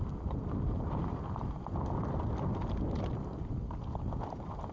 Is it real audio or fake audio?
real